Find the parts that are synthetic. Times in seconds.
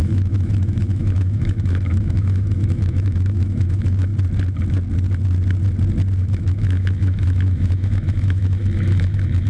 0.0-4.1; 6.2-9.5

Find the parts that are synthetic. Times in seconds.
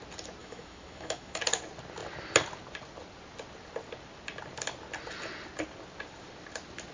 0.4-1.4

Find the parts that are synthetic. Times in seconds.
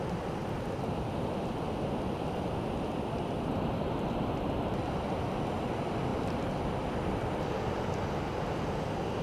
none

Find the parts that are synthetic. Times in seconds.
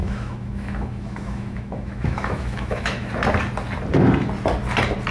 0.0-3.1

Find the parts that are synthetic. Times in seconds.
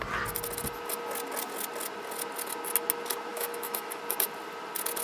3.3-4.0